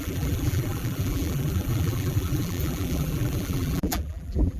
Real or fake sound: fake